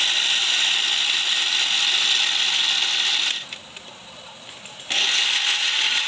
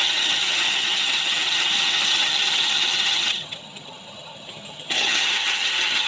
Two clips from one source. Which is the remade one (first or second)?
second